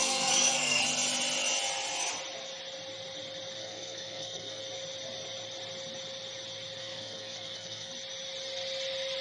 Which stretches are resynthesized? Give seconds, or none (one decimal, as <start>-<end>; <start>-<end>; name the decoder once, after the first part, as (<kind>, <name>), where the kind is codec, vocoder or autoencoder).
0.0-0.8 (codec, SNAC); 3.6-4.6; 6.8-7.9